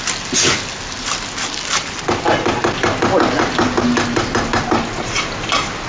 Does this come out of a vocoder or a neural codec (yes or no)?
no